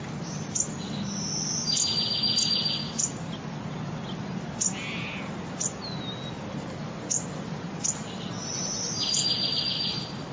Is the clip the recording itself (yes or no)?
yes